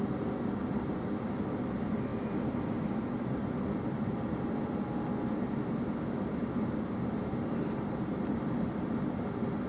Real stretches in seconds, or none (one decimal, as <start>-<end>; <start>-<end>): 0.0-9.7